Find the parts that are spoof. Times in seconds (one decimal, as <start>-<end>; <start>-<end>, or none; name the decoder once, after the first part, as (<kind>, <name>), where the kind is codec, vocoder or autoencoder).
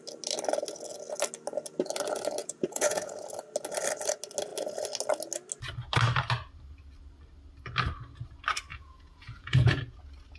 2.4-3.1 (vocoder, Vocos); 8.7-9.8